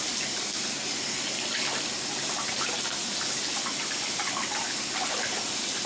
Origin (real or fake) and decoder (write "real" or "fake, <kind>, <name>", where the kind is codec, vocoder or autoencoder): real